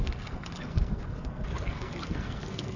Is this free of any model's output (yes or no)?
no